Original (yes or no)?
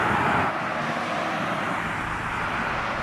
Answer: yes